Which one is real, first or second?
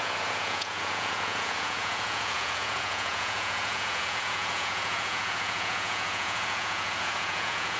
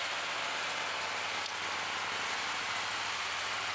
second